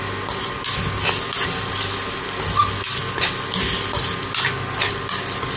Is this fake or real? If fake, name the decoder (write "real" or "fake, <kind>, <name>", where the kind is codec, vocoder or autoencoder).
real